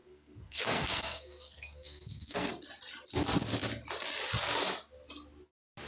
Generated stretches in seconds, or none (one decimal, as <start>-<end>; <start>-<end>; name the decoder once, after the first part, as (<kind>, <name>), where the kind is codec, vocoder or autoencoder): 0.0-2.5 (codec, SNAC)